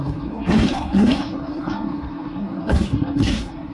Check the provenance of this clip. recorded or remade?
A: remade